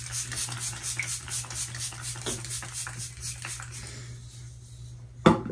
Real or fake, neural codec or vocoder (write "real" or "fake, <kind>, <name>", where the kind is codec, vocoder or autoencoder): real